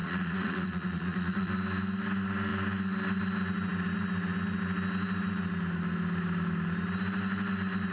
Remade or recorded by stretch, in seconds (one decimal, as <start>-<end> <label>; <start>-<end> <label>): 0.0-1.5 remade; 1.5-7.9 recorded